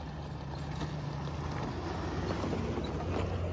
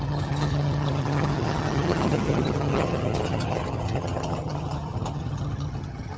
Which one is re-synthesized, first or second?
second